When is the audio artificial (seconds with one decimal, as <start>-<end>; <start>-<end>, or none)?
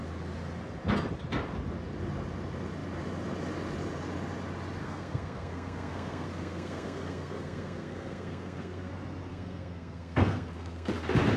4.8-8.9; 9.3-10.9